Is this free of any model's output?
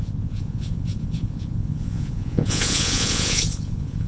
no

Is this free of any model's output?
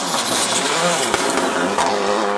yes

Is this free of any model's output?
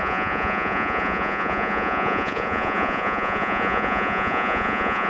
no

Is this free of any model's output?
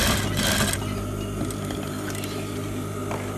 yes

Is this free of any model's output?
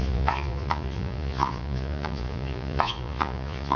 no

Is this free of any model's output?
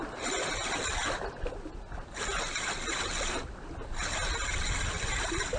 yes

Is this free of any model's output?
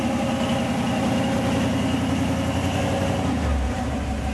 yes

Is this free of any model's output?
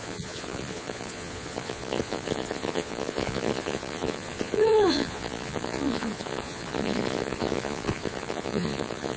no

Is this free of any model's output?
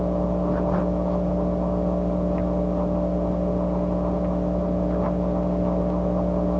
yes